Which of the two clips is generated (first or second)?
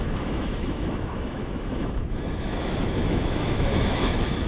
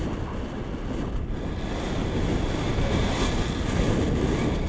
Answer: first